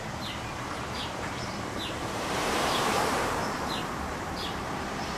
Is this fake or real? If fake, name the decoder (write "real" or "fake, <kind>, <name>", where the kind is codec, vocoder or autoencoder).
fake, vocoder, BigVGAN v2